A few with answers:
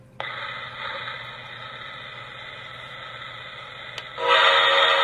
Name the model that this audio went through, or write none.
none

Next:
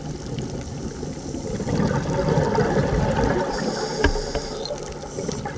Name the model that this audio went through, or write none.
none